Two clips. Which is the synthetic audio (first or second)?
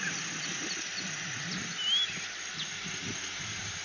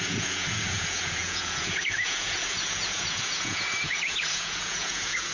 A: second